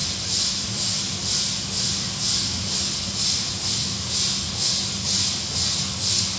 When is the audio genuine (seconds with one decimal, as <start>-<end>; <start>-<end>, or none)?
0.0-6.4